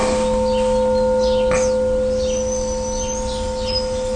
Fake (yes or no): no